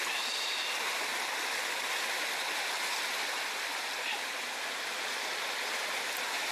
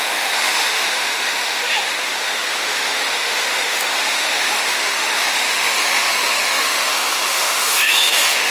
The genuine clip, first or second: first